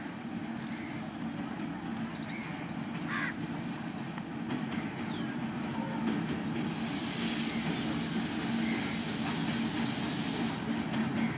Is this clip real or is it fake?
real